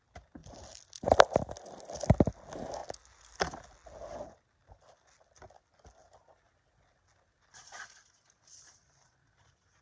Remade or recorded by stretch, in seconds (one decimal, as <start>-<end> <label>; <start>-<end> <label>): 0.0-9.8 recorded